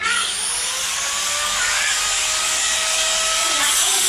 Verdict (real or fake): fake